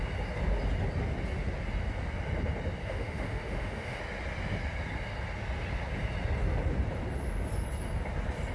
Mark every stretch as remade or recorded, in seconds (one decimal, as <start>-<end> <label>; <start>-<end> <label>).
0.0-2.8 recorded; 2.8-4.0 remade; 4.0-8.5 recorded